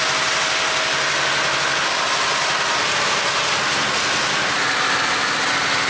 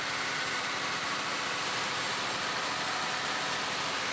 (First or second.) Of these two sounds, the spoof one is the second